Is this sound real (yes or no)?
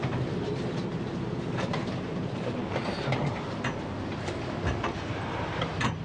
no